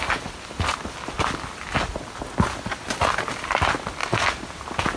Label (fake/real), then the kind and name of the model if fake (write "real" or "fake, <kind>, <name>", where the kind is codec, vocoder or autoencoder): real